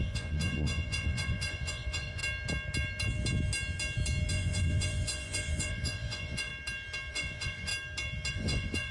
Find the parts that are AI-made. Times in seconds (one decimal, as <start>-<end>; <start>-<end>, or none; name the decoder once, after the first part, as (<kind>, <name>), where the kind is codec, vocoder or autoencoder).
0.0-2.2 (vocoder, Vocos); 4.3-6.5; 7.1-7.7; 8.3-8.9